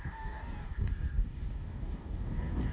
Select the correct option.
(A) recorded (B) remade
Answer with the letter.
B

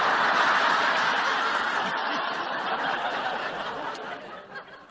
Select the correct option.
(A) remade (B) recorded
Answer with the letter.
A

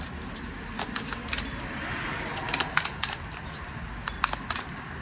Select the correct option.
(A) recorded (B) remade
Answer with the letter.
A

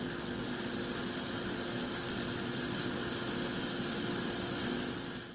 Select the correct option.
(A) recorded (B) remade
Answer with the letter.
A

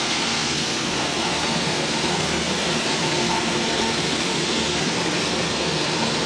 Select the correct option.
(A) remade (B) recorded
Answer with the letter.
A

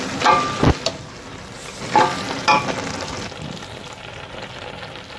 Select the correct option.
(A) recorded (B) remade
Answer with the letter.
A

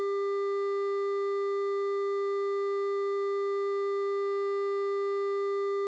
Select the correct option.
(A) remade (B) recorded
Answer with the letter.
B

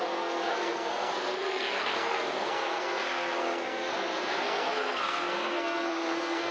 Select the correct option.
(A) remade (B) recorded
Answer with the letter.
A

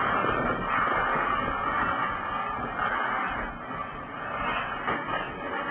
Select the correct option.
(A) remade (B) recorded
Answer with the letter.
B